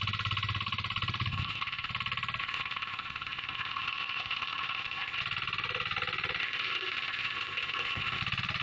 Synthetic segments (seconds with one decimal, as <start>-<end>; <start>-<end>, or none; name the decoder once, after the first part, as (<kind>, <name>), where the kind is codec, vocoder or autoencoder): 1.3-1.9 (codec, ZipCodec); 2.4-5.2; 6.4-8.2